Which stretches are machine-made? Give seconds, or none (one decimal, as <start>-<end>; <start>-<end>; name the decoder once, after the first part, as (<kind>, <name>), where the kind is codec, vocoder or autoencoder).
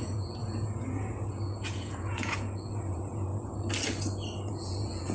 0.0-3.3 (vocoder, Vocos); 4.5-5.1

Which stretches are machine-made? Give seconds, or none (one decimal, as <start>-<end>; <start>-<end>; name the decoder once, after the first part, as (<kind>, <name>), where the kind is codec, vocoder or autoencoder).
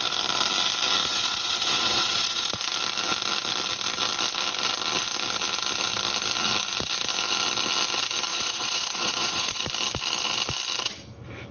1.0-2.6 (vocoder, Vocos); 8.3-9.6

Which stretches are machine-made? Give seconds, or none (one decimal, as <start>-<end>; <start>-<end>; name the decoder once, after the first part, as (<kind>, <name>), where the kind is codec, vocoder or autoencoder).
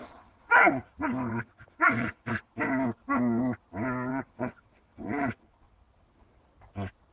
0.0-0.9 (vocoder, WaveNeXt); 1.3-2.3; 4.1-5.8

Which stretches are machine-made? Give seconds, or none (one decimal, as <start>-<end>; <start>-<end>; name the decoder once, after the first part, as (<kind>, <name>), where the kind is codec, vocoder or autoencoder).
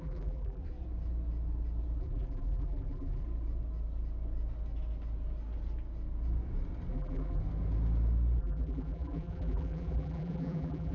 0.0-0.6 (vocoder, BigVGAN v2); 2.0-3.2; 6.9-7.4; 8.4-10.9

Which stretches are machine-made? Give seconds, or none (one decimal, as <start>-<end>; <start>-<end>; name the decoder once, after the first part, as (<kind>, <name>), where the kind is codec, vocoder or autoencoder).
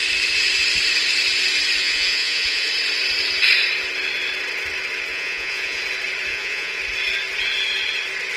1.8-2.7 (vocoder, Vocos); 5.1-5.8; 6.3-6.8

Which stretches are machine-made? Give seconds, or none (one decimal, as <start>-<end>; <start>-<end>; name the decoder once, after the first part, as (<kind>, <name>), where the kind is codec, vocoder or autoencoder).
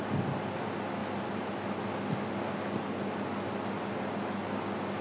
none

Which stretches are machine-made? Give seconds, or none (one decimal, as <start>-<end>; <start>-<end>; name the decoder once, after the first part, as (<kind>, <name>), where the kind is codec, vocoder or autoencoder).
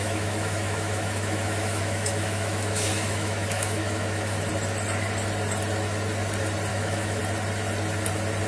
0.0-4.5 (autoencoder, DAC-VAE); 6.7-7.2